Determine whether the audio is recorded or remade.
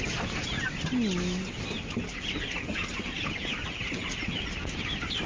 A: recorded